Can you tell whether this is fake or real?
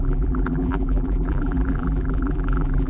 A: fake